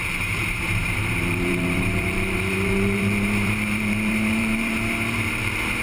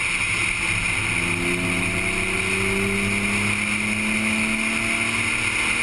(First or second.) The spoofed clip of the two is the first